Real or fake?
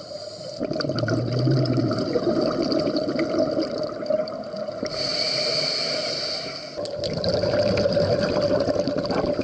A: real